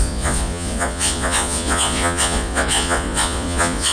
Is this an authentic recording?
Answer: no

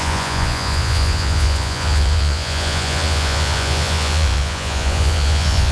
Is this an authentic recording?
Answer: no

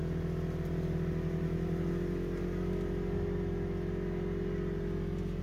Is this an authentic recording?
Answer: yes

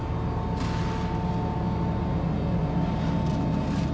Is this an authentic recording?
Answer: yes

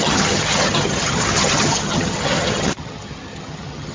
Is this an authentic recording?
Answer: no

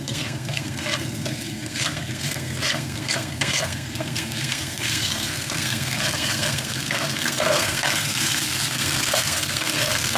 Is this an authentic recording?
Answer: no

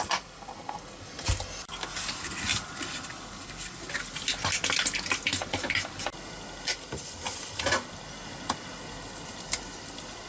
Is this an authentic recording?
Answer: yes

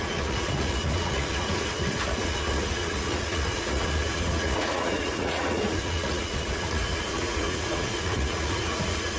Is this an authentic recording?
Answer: no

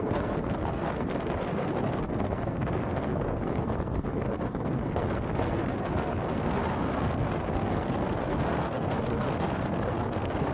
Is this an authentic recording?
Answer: no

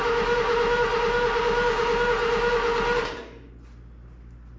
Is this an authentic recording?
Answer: yes